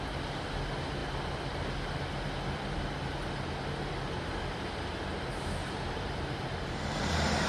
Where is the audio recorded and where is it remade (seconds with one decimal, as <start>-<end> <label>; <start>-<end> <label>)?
0.0-5.6 recorded; 5.6-7.5 remade